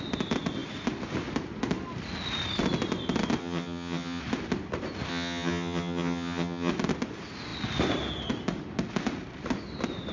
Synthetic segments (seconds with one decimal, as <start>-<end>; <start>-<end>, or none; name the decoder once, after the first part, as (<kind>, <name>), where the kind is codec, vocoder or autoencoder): 3.4-4.2 (vocoder, HiFi-GAN); 5.1-6.7